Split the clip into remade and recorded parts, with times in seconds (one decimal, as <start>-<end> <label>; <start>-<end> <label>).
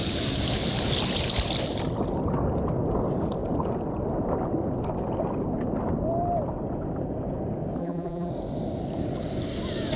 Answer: 0.0-7.8 recorded; 7.8-8.3 remade; 8.3-10.0 recorded